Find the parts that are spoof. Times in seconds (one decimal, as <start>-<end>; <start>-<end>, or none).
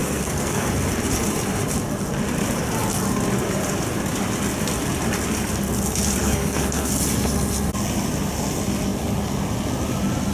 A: 0.0-0.7; 6.2-6.9